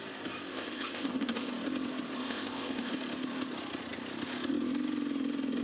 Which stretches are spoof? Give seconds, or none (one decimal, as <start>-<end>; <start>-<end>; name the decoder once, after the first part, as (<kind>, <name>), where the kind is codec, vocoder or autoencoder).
0.5-1.5 (codec, ZipCodec); 2.2-2.9